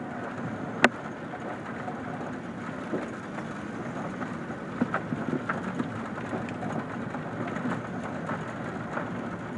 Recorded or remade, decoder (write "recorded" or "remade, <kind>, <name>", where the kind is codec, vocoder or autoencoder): recorded